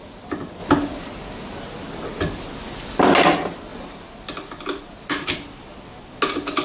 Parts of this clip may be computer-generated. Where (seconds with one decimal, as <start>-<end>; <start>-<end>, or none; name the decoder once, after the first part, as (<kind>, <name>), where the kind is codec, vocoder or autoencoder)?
none